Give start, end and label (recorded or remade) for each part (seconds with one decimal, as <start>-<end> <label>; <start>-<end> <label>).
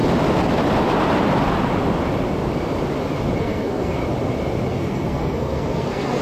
0.0-3.4 recorded; 3.4-4.0 remade; 4.0-4.7 recorded; 4.7-6.2 remade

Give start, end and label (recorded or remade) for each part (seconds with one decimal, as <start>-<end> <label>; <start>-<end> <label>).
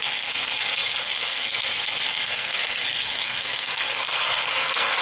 0.0-5.0 remade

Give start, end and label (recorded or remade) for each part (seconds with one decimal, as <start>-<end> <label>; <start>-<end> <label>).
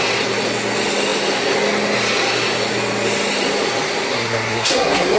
0.0-4.1 recorded; 4.1-5.2 remade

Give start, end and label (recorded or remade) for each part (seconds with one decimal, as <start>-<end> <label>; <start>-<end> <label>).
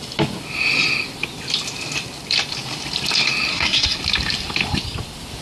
0.0-3.5 recorded; 3.5-4.0 remade; 4.0-5.4 recorded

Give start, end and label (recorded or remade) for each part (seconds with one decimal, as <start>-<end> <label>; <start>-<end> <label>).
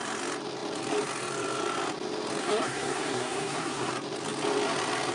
0.0-2.4 recorded; 2.4-3.9 remade; 3.9-5.1 recorded